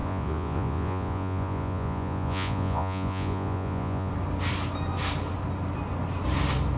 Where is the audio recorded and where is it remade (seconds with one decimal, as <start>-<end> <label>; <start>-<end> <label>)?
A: 0.0-4.1 remade; 4.1-6.8 recorded